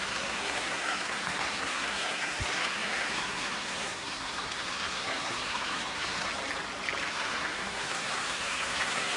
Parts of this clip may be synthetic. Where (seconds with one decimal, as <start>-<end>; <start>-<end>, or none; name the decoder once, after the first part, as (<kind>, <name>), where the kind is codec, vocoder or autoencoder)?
0.0-6.3 (codec, SNAC); 7.1-9.2